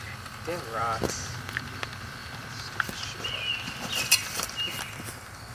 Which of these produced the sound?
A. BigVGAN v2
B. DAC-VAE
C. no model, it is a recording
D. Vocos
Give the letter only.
A